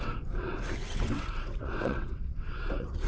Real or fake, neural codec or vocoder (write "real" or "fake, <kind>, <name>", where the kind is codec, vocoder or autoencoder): fake, vocoder, WaveNeXt